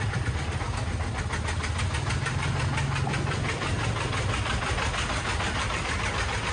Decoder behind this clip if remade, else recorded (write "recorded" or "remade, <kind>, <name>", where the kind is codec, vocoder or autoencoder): recorded